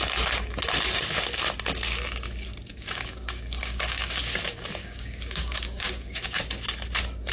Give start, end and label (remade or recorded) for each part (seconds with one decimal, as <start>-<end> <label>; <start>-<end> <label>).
0.0-2.7 recorded; 2.7-4.2 remade; 4.2-4.8 recorded; 4.8-6.4 remade; 6.4-7.3 recorded